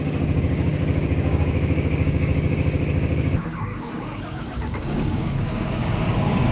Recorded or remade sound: remade